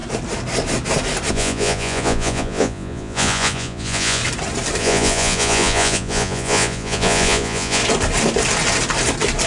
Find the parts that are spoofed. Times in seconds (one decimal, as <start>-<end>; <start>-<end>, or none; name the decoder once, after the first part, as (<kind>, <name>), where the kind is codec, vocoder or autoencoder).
1.3-4.2 (vocoder, Vocos); 4.8-7.8